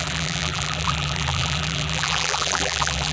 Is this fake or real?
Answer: fake